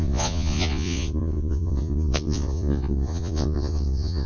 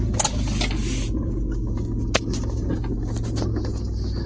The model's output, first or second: first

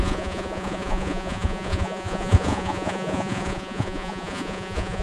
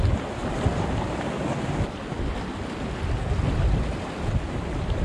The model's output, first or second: first